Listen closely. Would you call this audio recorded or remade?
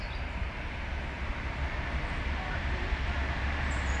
remade